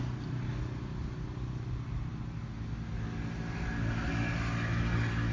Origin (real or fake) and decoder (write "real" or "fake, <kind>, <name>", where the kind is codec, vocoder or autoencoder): real